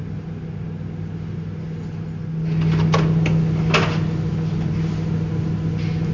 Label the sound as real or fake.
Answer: real